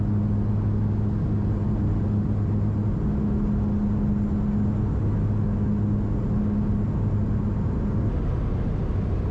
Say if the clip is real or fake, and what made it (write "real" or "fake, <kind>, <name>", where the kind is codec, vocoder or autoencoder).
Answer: real